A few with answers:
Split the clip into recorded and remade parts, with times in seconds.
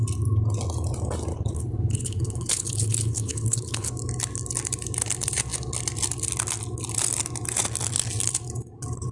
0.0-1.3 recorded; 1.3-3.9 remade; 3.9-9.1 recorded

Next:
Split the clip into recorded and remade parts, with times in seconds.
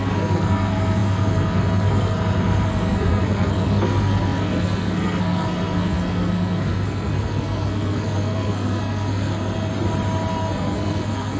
0.0-9.7 remade; 9.7-10.3 recorded; 10.3-11.4 remade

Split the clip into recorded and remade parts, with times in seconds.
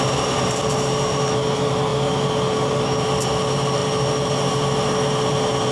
0.0-5.7 recorded